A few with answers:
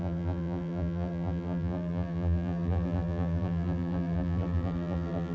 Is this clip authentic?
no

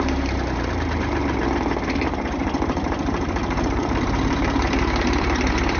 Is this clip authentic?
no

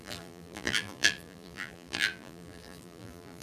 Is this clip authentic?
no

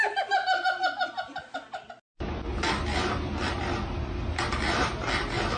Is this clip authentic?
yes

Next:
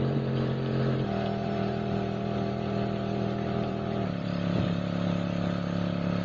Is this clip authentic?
no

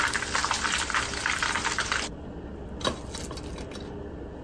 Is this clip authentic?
yes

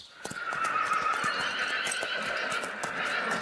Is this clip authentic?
yes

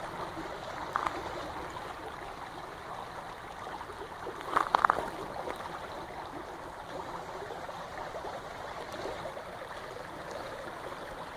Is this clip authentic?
no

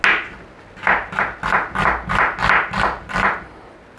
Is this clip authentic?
yes